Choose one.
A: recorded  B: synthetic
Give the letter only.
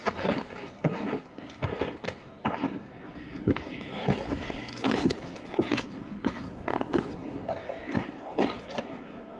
B